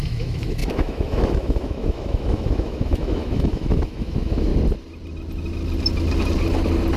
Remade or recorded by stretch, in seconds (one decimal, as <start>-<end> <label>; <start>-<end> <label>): 0.0-4.5 remade; 4.5-7.0 recorded